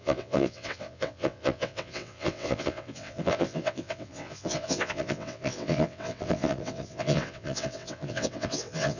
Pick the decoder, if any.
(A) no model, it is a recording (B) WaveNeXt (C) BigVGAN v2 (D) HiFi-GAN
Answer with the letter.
B